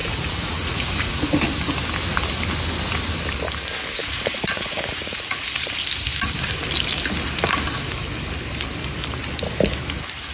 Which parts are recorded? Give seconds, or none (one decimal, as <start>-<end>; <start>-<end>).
1.2-4.0; 5.5-10.3